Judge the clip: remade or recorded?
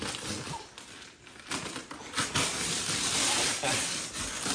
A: recorded